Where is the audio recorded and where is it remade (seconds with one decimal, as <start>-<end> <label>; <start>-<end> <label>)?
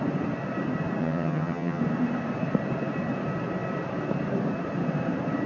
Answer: 0.0-1.0 recorded; 1.0-1.8 remade; 1.8-5.5 recorded